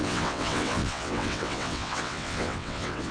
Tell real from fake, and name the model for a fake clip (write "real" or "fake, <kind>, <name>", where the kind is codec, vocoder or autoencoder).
fake, vocoder, WaveNeXt